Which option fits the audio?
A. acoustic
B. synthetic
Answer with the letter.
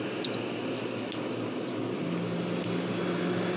A